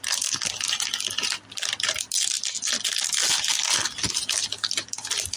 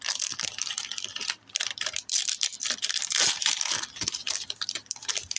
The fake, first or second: second